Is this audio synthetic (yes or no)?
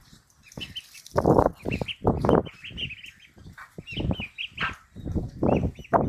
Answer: no